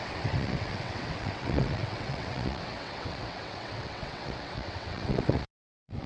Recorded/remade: remade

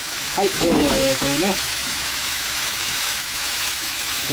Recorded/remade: remade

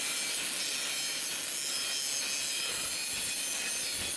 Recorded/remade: recorded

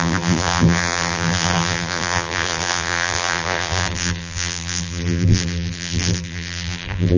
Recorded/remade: remade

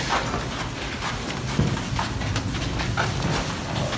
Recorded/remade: recorded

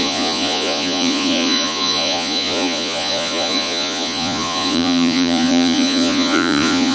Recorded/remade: remade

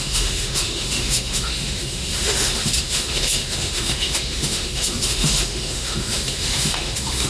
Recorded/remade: remade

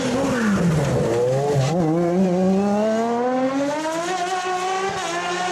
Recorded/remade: recorded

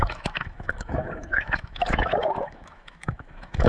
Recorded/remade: remade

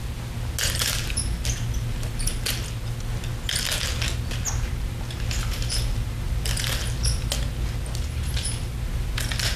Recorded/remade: recorded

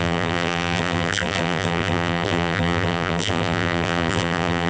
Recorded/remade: remade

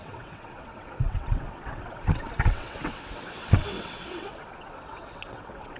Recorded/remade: remade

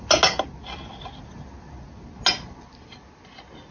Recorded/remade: recorded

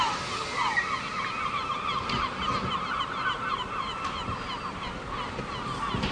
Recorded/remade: recorded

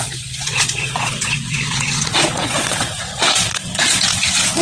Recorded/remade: remade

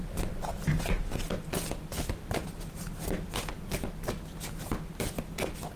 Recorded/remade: recorded